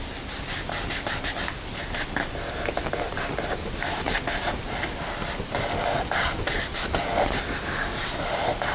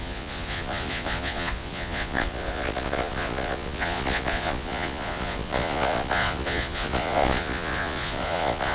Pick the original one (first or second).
first